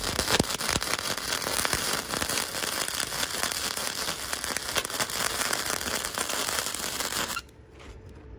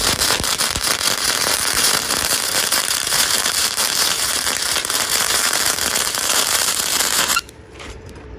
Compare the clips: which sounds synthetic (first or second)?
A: second